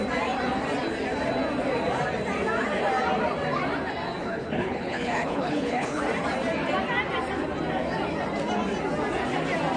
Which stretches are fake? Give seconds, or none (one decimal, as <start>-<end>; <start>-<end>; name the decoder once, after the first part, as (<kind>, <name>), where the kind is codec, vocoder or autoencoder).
4.2-6.0 (codec, HILCodec)